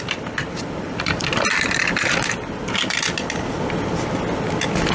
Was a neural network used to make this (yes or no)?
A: no